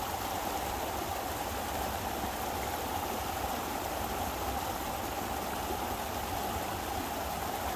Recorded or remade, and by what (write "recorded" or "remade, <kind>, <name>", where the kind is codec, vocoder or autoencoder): recorded